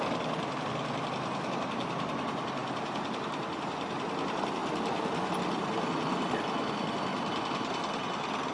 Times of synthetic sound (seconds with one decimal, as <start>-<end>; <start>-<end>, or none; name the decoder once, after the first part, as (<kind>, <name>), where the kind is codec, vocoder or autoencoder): none